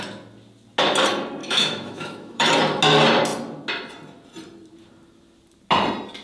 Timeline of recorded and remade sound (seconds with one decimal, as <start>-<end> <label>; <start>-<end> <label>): 0.0-1.4 recorded; 1.4-2.6 remade; 2.6-6.2 recorded